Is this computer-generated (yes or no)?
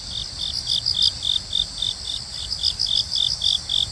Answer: no